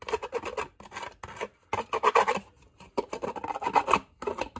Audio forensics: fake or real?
real